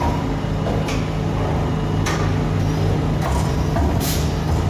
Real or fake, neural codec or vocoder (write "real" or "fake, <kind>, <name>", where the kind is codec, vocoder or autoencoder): real